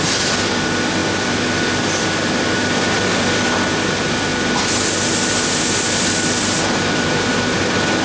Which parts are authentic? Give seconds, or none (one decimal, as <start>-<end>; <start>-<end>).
0.0-8.0